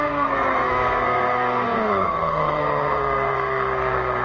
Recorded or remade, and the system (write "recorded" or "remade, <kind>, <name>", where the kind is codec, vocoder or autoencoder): remade, codec, SNAC